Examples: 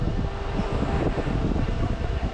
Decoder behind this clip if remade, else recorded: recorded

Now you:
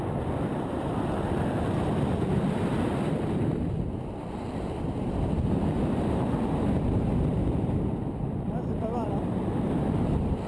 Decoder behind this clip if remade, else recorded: remade, vocoder, BigVGAN v2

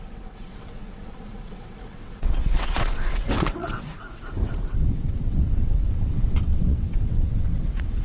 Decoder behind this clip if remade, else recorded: remade, vocoder, WaveNeXt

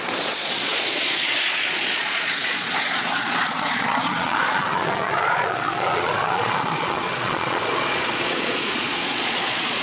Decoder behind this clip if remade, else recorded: remade, vocoder, Vocos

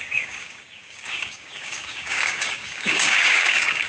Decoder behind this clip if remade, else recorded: remade, codec, DAC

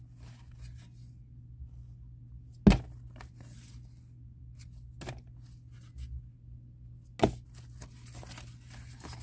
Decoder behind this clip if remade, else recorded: recorded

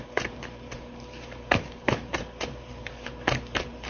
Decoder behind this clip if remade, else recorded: remade, vocoder, BigVGAN v2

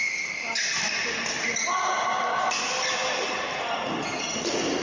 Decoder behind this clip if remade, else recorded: recorded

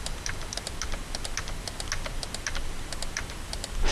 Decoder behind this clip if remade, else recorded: recorded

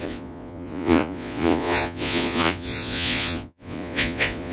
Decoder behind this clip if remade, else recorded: remade, vocoder, Vocos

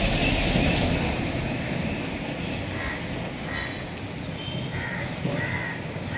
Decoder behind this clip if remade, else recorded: recorded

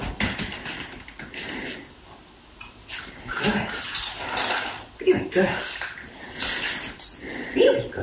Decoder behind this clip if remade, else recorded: recorded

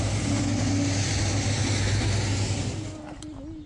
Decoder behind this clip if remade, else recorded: recorded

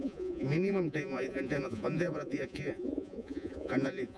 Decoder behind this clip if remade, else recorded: remade, vocoder, Vocos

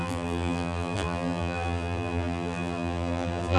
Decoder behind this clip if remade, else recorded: remade, vocoder, BigVGAN v2